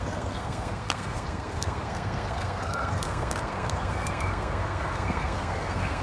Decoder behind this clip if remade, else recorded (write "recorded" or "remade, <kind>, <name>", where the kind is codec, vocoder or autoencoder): remade, codec, SNAC